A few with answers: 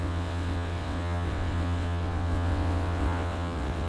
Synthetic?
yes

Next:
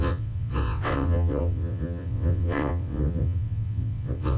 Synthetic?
yes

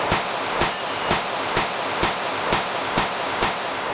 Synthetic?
no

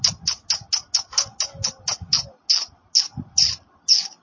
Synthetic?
no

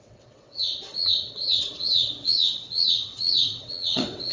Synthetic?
yes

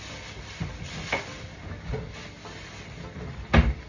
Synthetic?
no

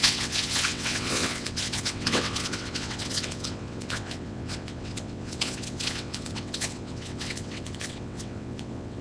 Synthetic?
yes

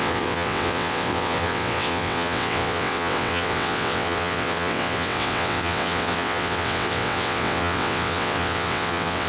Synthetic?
yes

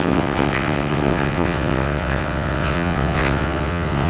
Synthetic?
yes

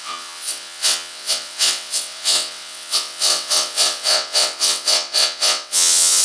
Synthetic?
yes